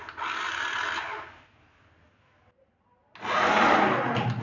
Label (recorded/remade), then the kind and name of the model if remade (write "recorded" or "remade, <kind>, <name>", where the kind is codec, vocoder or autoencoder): recorded